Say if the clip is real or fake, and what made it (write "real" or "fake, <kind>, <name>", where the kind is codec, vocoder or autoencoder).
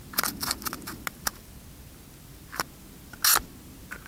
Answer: real